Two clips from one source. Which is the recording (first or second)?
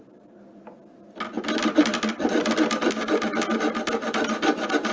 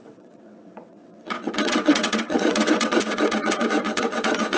first